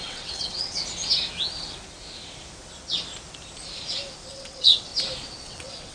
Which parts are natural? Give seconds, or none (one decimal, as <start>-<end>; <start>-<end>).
0.8-4.3; 4.9-5.4